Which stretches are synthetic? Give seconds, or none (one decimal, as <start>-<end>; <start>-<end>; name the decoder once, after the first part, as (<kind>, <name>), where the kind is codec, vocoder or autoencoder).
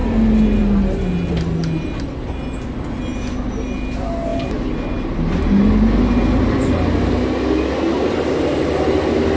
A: none